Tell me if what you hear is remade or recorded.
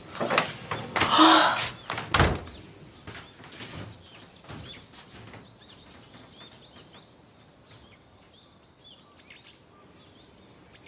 recorded